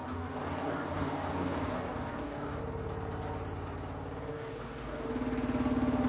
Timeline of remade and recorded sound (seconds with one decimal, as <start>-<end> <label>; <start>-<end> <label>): 0.0-2.6 remade; 2.6-4.3 recorded; 4.3-5.1 remade; 5.1-6.1 recorded